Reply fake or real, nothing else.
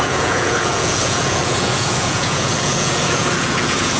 fake